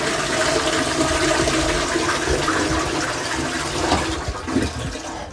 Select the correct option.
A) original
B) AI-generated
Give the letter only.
A